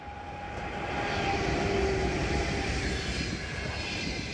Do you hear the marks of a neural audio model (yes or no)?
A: no